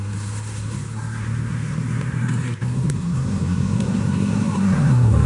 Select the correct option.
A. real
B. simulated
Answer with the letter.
B